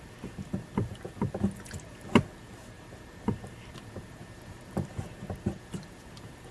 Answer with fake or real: real